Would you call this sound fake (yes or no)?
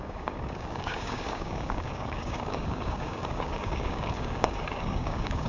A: yes